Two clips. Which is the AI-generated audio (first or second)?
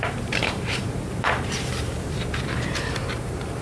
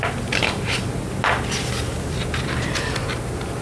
first